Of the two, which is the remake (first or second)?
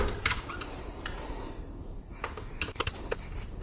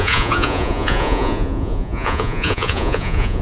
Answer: second